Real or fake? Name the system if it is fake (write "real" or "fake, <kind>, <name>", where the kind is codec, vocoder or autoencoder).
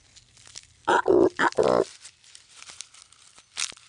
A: real